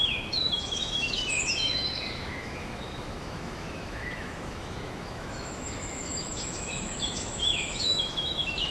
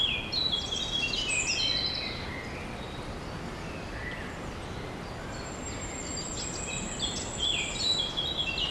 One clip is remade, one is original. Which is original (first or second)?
second